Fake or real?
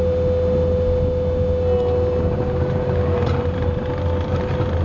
real